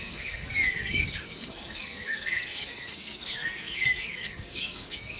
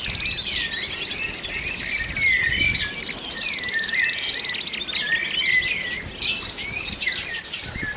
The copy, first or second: first